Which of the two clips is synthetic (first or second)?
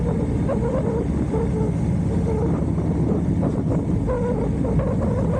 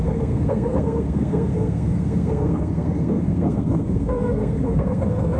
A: second